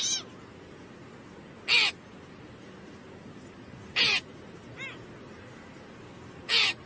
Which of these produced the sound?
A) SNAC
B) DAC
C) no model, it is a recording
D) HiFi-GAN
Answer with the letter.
C